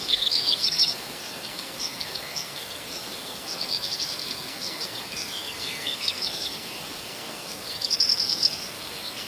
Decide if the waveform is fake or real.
fake